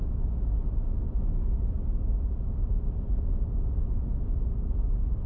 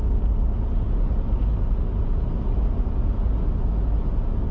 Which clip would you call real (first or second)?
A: second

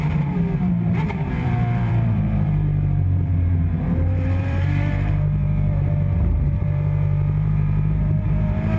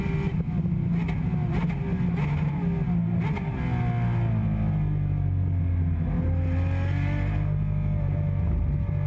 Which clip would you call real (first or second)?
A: second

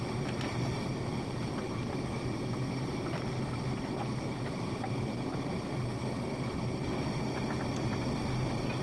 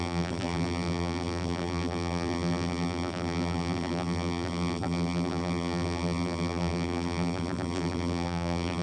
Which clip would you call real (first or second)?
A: first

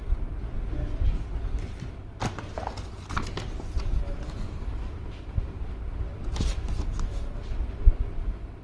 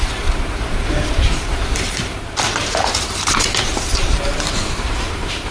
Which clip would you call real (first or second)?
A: first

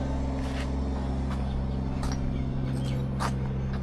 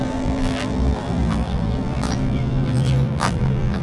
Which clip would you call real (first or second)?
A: first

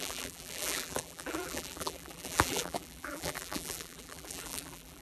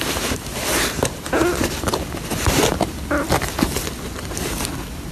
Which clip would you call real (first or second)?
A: second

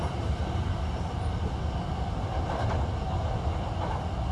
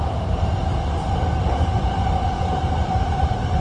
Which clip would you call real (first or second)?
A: first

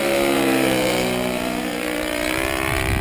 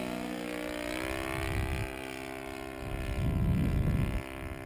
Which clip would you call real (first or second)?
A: second